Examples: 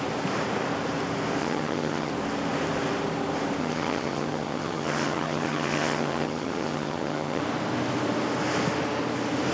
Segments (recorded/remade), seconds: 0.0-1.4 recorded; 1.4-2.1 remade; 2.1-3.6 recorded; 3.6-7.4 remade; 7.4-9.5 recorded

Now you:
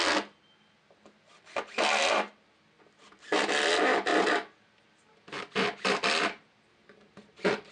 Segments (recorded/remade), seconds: 0.0-7.7 recorded